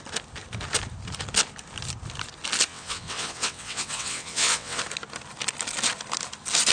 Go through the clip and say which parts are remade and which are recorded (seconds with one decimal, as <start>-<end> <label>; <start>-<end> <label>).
0.0-2.7 recorded; 2.7-4.8 remade; 4.8-6.7 recorded